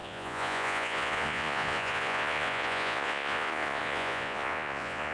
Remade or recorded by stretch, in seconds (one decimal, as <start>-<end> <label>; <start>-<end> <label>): 0.0-5.1 remade